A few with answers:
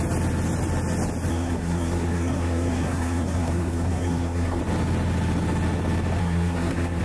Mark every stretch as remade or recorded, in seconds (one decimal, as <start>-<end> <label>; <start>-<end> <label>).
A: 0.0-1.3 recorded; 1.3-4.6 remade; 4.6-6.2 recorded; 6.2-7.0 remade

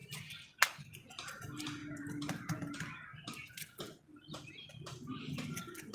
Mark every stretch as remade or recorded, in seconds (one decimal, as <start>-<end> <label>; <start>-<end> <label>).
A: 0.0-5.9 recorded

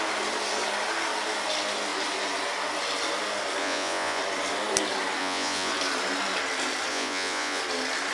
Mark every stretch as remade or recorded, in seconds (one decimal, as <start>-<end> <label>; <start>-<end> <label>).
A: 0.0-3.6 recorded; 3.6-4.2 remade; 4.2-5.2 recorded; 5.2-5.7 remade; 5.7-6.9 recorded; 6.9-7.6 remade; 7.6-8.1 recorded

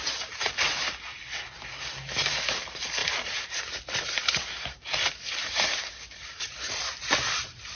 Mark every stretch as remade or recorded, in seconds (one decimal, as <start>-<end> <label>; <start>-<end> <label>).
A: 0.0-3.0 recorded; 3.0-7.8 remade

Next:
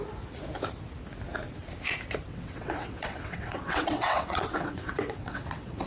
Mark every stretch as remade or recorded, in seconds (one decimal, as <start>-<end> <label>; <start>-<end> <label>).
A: 0.0-2.3 recorded; 2.3-5.9 remade

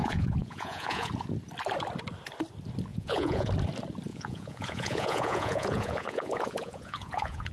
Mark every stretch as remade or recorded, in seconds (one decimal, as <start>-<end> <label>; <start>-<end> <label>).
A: 0.0-1.1 remade; 1.1-2.9 recorded; 2.9-3.5 remade; 3.5-4.1 recorded; 4.1-7.5 remade

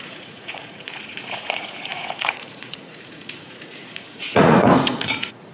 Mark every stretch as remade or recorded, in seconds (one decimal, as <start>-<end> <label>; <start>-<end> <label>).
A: 0.0-5.5 remade

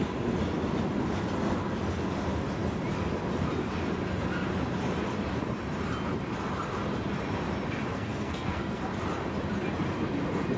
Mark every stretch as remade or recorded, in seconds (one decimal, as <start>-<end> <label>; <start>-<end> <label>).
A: 0.0-7.9 recorded; 7.9-8.8 remade; 8.8-10.6 recorded